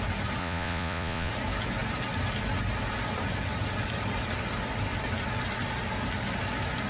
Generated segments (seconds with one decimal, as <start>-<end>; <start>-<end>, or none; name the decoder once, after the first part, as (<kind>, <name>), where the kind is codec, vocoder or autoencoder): 0.4-1.3 (vocoder, Vocos)